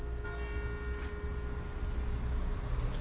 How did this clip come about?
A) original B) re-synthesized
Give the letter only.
A